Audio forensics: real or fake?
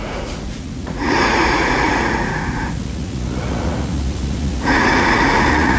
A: fake